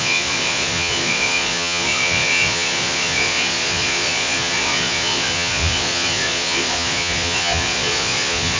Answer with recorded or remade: remade